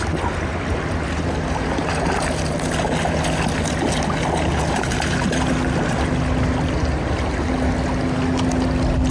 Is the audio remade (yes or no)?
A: no